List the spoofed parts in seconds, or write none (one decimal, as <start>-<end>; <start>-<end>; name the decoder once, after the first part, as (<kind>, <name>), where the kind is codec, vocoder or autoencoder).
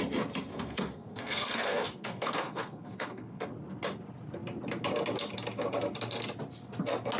0.5-3.5 (codec, SNAC)